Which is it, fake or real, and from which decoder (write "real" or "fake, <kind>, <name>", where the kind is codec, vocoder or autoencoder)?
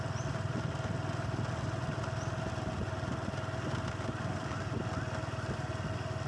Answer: real